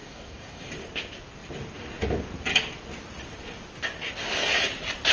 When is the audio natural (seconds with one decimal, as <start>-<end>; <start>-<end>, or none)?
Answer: 0.7-5.1